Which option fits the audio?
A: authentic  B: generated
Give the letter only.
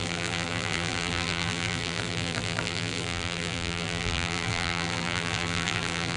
B